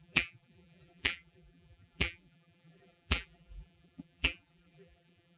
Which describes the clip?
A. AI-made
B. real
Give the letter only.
A